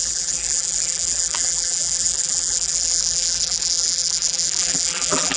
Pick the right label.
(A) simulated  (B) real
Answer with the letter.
A